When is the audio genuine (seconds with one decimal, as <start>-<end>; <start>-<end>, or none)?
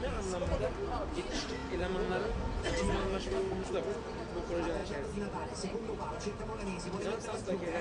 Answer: 0.0-3.0; 3.7-7.8